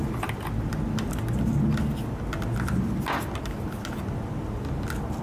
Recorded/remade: recorded